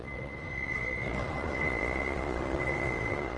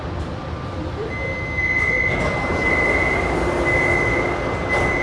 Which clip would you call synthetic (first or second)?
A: first